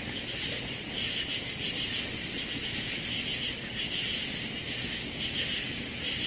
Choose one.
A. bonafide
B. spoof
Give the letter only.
A